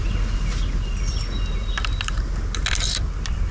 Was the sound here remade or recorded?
recorded